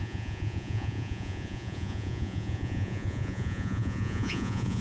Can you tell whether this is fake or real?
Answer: fake